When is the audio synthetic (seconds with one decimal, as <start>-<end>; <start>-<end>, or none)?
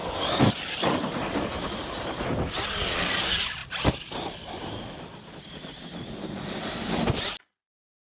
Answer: none